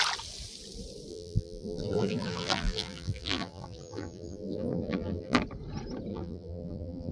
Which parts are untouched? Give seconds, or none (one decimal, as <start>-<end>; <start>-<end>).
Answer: 0.0-1.1; 5.4-6.1